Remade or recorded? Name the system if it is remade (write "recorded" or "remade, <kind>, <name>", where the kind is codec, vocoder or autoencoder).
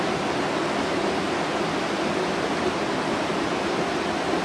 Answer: recorded